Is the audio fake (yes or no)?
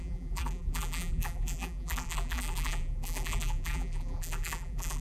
yes